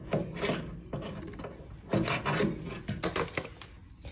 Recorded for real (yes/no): yes